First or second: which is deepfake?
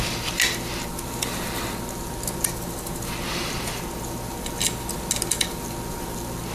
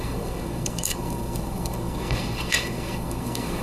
second